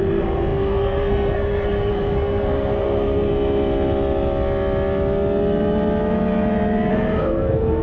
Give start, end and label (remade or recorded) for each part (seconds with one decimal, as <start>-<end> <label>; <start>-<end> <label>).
0.0-3.3 remade; 3.3-6.9 recorded; 6.9-7.8 remade